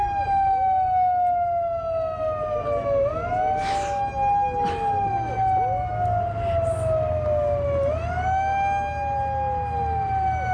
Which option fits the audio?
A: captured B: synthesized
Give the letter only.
A